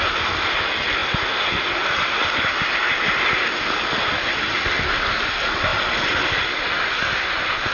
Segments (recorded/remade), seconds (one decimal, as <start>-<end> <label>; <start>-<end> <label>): 0.0-7.7 recorded